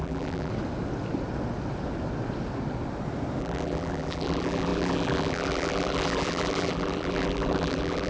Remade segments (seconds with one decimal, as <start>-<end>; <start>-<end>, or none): 0.0-0.5; 3.4-8.1